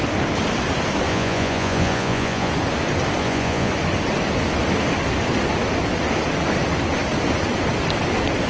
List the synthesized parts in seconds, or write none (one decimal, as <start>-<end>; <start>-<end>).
1.1-2.5; 3.2-3.7